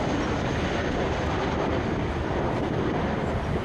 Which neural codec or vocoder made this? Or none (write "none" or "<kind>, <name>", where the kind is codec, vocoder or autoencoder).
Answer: none